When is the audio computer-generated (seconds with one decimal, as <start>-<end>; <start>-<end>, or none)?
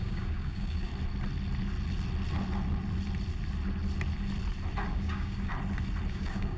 0.0-0.9; 4.9-5.5; 6.1-6.6